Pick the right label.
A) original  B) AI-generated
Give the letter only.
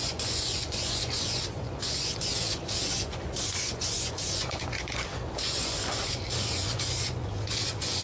B